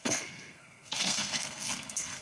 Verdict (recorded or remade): remade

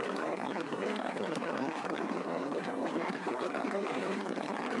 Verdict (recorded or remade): remade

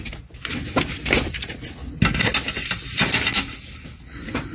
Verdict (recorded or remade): recorded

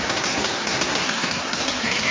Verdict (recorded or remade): remade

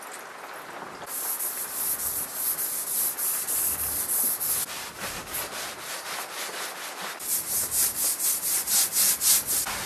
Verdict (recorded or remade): recorded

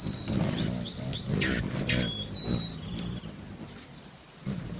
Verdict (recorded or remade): recorded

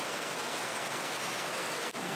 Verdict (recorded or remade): remade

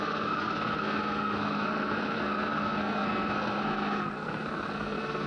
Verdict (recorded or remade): remade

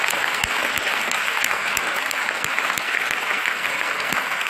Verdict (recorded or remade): remade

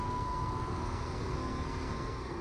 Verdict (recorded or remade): remade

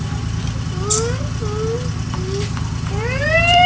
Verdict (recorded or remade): recorded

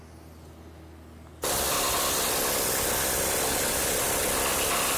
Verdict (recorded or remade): recorded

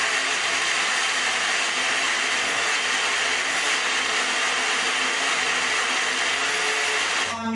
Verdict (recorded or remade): recorded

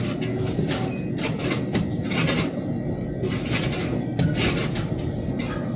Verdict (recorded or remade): recorded